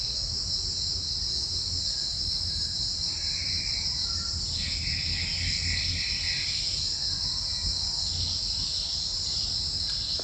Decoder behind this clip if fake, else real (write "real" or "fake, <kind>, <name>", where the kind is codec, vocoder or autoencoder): real